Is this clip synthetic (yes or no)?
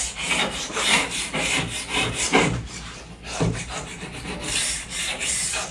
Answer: yes